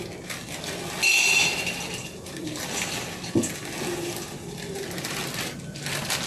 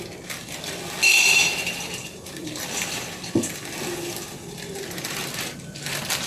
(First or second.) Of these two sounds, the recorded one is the first